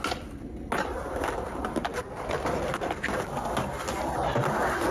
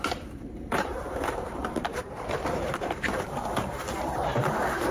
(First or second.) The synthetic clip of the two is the second